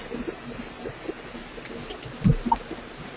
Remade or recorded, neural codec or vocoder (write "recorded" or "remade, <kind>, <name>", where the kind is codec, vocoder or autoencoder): recorded